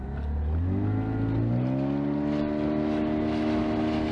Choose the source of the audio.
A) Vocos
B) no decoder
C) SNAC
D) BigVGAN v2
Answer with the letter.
B